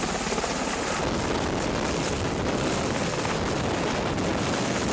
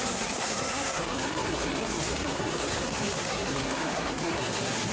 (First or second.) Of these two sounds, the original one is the first